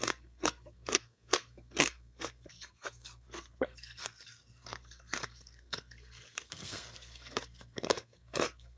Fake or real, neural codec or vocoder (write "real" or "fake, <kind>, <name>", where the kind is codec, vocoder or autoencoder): fake, codec, SNAC